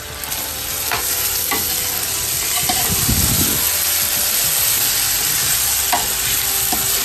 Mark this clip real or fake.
real